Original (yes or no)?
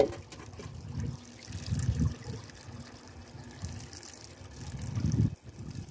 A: yes